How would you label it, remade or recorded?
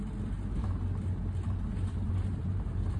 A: recorded